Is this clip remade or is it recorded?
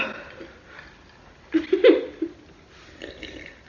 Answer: recorded